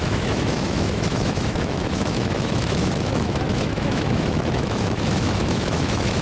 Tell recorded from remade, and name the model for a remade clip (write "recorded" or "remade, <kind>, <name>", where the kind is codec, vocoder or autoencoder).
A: remade, autoencoder, DAC-VAE